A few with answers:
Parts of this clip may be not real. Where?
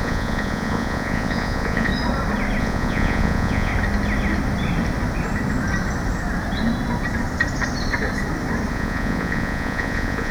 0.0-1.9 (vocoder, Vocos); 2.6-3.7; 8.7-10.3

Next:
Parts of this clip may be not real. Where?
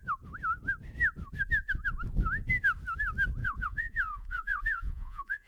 3.4-5.5 (vocoder, Vocos)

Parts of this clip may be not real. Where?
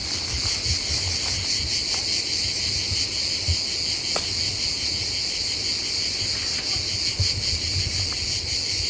none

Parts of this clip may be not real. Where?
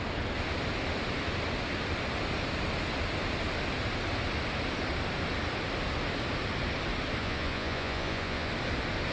7.2-8.5 (vocoder, Vocos)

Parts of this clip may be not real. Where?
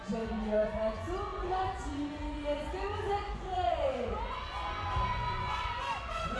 0.0-6.4 (vocoder, Vocos)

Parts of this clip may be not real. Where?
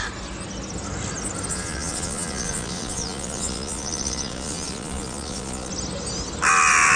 1.5-5.7 (vocoder, Vocos)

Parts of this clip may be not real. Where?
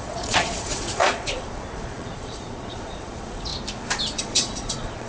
0.0-3.5 (vocoder, Vocos); 4.2-5.1